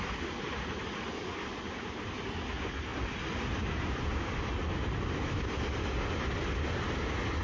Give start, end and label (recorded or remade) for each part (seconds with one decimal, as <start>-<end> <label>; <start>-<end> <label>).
0.0-7.4 recorded